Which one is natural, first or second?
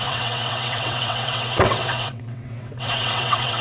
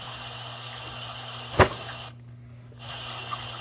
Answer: second